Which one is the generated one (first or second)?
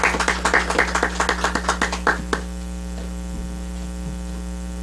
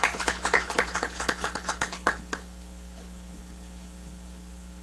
second